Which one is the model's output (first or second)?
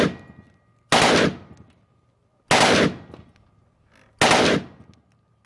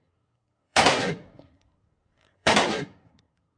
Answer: second